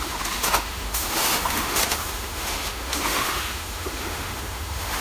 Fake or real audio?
fake